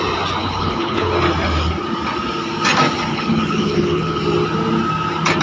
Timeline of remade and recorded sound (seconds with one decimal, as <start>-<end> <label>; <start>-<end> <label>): 0.0-0.4 recorded; 0.4-1.1 remade; 1.1-3.1 recorded; 3.1-4.2 remade; 4.2-5.4 recorded